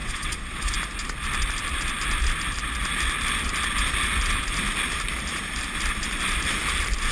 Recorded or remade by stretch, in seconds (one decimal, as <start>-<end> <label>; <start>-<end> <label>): 0.0-0.7 remade; 0.7-7.1 recorded